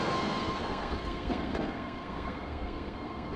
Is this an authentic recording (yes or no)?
no